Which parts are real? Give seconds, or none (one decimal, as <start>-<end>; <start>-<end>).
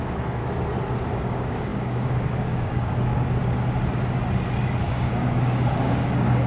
0.4-1.1; 3.4-4.8